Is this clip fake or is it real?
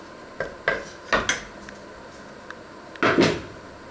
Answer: real